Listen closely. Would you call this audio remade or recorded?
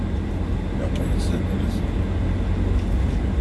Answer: recorded